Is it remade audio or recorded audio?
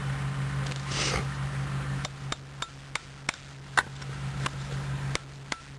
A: recorded